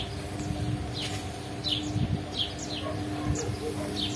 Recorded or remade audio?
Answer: recorded